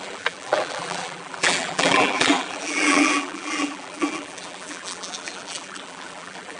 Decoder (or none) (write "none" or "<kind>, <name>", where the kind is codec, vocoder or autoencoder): vocoder, BigVGAN v2